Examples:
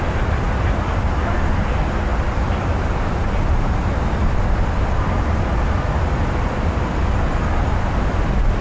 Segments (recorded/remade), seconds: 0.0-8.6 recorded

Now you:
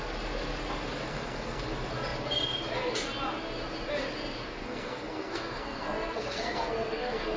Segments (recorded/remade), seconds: 0.0-1.1 recorded; 1.1-1.6 remade; 1.6-4.6 recorded; 4.6-7.4 remade

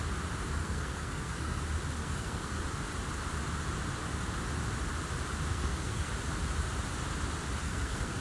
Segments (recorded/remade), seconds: 0.0-0.6 recorded; 0.6-1.6 remade; 1.6-2.0 recorded; 2.0-2.6 remade; 2.6-5.5 recorded; 5.5-6.1 remade; 6.1-7.6 recorded; 7.6-8.2 remade

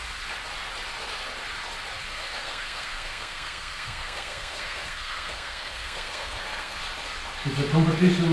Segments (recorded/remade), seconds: 0.0-2.1 recorded; 2.1-6.8 remade; 6.8-8.3 recorded

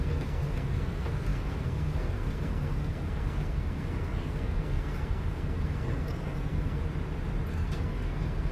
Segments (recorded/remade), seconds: 0.0-6.8 remade; 6.8-7.5 recorded; 7.5-8.5 remade